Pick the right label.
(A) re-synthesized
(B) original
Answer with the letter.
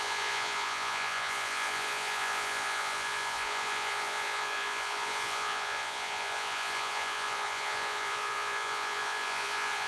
A